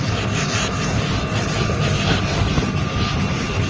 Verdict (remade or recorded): recorded